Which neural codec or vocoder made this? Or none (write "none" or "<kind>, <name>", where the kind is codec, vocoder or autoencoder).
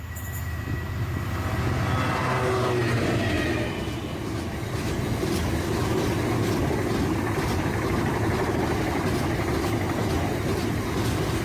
none